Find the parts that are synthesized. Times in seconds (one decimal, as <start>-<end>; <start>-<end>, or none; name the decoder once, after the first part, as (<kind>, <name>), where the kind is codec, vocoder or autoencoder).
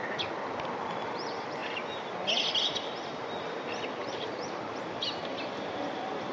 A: 4.0-6.3 (vocoder, BigVGAN v2)